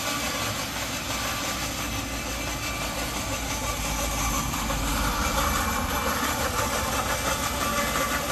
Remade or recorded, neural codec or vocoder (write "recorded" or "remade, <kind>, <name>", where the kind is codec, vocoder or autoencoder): recorded